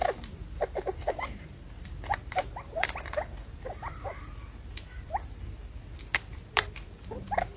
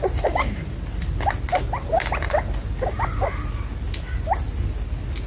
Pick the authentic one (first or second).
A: second